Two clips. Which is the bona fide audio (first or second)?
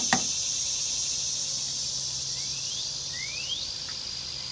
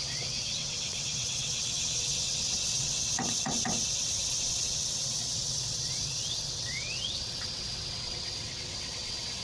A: first